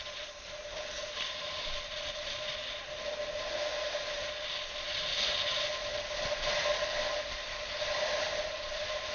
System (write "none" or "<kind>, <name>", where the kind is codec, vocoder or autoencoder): none